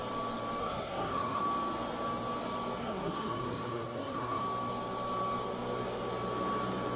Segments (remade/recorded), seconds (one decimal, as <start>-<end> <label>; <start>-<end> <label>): 0.0-0.6 recorded; 0.6-1.4 remade; 1.4-2.8 recorded; 2.8-4.4 remade; 4.4-7.0 recorded